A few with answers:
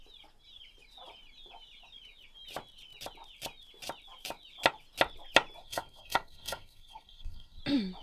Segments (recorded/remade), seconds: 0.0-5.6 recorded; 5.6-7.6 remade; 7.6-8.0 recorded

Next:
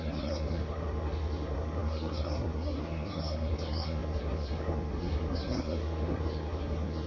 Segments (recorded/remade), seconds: 0.0-7.1 remade

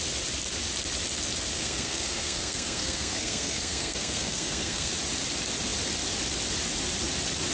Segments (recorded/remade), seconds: 0.0-1.5 recorded; 1.5-4.9 remade; 4.9-7.5 recorded

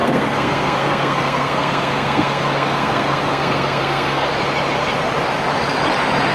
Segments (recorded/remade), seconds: 0.0-4.3 remade; 4.3-6.3 recorded